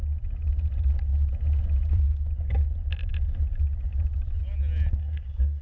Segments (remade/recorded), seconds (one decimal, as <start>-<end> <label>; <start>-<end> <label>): 0.0-5.0 recorded; 5.0-5.6 remade